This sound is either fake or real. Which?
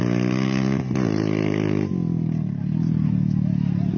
real